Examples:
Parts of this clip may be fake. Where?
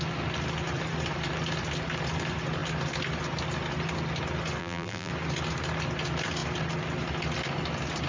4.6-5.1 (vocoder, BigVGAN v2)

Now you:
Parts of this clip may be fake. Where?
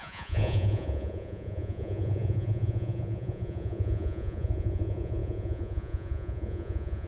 0.0-7.1 (vocoder, Vocos)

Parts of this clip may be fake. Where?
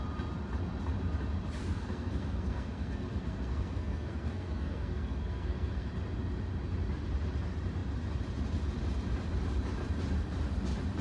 1.6-5.9 (codec, SNAC)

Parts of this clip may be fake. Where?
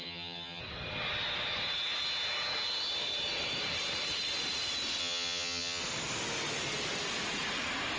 0.0-0.6 (vocoder, HiFi-GAN); 5.0-5.8